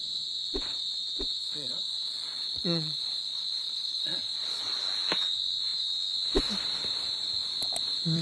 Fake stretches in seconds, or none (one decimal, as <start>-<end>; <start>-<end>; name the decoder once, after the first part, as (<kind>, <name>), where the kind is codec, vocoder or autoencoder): 1.4-4.8 (vocoder, Vocos)